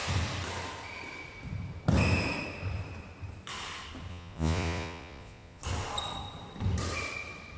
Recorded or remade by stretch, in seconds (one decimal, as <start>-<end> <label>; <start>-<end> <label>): 0.0-4.1 recorded; 4.1-5.6 remade; 5.6-7.6 recorded